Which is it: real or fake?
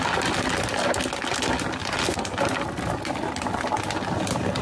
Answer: real